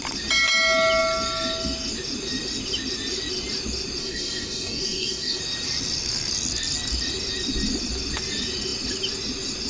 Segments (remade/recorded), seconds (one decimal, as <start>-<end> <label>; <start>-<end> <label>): 0.0-4.0 recorded; 4.0-5.4 remade; 5.4-9.7 recorded